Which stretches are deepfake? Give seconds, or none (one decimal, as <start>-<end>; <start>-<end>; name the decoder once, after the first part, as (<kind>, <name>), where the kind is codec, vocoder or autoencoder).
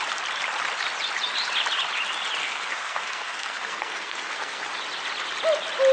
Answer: 2.4-4.6 (codec, SNAC)